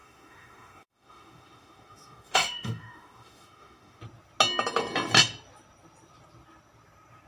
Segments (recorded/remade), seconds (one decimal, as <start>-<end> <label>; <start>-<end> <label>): 0.0-4.0 remade; 4.0-7.3 recorded